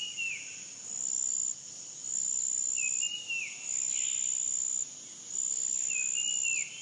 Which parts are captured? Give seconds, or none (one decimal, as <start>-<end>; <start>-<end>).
0.0-6.8